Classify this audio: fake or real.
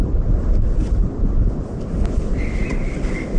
real